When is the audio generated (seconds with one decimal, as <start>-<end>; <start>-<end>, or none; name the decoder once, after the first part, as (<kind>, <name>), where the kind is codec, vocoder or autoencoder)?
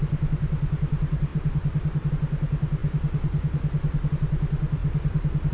1.3-2.1 (vocoder, BigVGAN v2); 4.8-5.5